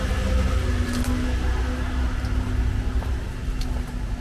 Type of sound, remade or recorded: recorded